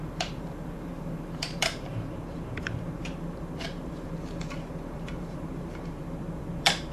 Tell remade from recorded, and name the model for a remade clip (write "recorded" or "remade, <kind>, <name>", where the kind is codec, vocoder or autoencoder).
remade, vocoder, BigVGAN v2